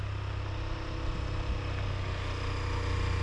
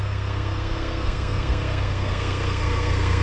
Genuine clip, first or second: first